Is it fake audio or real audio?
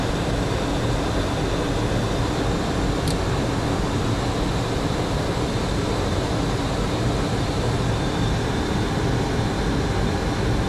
real